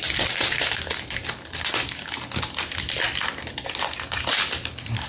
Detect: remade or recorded recorded